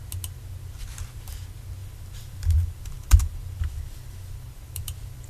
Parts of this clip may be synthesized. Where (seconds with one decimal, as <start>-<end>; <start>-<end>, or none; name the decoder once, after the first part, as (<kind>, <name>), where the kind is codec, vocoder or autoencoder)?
1.8-5.3 (vocoder, BigVGAN v2)